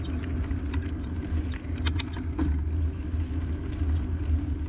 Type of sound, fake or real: real